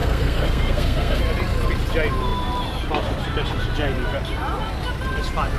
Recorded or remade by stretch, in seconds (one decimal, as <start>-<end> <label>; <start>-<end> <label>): 0.0-1.2 remade; 1.2-5.6 recorded